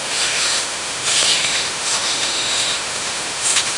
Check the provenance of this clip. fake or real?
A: fake